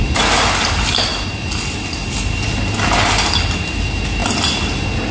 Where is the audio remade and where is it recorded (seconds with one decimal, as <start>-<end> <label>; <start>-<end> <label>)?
0.0-5.1 recorded